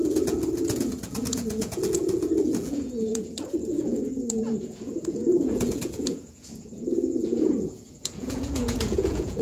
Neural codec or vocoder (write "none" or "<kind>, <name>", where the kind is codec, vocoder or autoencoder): vocoder, Vocos